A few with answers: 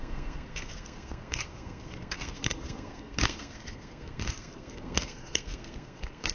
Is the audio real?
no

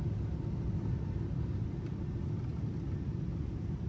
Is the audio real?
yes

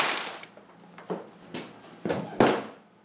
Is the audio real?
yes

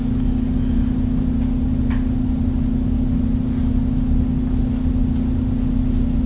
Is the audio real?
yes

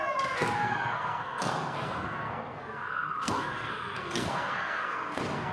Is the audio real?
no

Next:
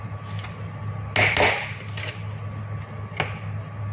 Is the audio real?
yes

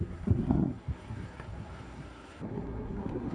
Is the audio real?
no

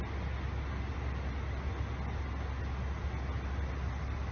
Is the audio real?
yes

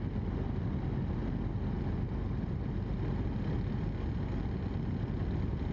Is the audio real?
yes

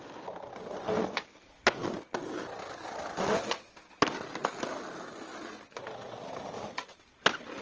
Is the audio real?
yes